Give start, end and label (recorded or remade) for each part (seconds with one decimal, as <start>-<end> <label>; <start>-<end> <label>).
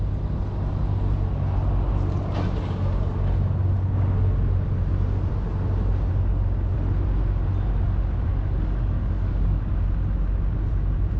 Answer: 0.0-8.3 recorded; 8.3-9.7 remade; 9.7-11.2 recorded